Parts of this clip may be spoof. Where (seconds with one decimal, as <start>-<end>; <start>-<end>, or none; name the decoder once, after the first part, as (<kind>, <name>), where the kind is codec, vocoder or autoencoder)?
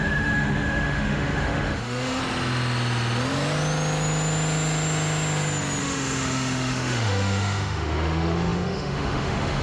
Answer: 0.0-2.2 (autoencoder, DAC-VAE); 5.8-9.6